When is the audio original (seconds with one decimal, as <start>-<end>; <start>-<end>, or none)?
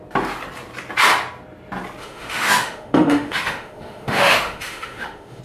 0.0-2.0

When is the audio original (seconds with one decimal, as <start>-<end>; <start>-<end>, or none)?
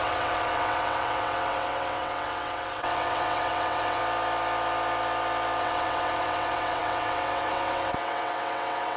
4.0-5.6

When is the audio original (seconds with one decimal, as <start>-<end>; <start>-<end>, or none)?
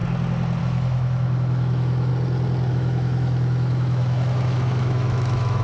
0.0-0.6; 2.1-2.7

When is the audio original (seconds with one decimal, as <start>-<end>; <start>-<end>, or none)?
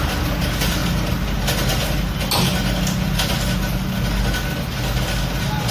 0.0-5.7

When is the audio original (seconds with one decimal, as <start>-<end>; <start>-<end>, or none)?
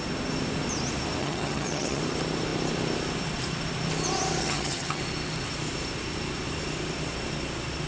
0.0-1.2; 2.0-4.4; 5.0-7.9